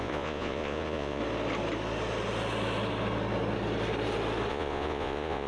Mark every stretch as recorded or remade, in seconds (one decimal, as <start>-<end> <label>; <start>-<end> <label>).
0.0-1.2 remade; 1.2-4.5 recorded; 4.5-5.5 remade